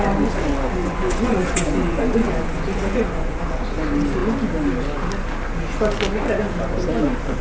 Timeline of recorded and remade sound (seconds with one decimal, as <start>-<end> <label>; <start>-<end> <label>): 0.0-0.8 recorded; 0.8-3.4 remade; 3.4-7.4 recorded